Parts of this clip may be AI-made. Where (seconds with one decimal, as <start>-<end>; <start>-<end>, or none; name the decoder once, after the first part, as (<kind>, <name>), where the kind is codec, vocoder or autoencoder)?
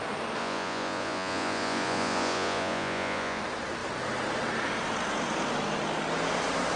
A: 0.4-3.4 (vocoder, Vocos)